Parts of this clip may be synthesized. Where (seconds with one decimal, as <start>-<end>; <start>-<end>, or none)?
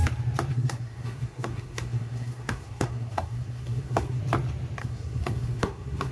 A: 0.5-4.2; 4.8-6.1